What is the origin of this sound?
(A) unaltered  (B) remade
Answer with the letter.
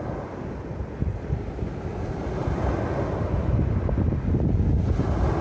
A